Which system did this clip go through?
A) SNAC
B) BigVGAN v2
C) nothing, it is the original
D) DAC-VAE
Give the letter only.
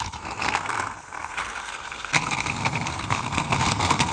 A